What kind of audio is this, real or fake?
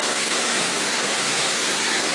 fake